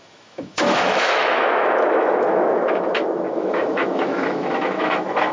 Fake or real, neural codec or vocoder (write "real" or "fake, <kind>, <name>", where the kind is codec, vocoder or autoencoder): fake, autoencoder, DAC-VAE